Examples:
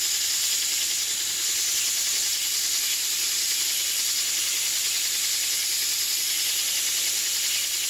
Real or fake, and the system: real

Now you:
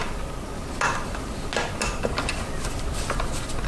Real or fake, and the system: real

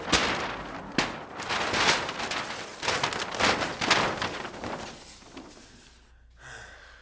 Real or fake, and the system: real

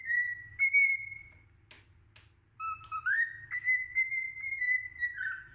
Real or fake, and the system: real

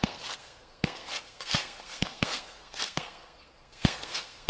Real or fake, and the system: fake, codec, SNAC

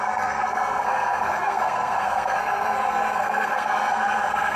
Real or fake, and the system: fake, codec, SNAC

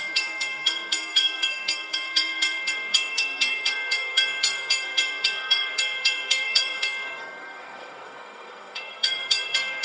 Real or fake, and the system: fake, codec, SNAC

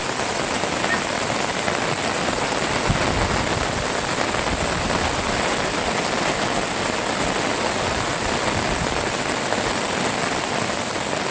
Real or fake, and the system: real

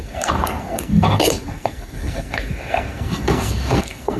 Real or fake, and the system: fake, codec, SNAC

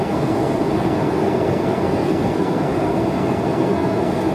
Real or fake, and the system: fake, codec, SNAC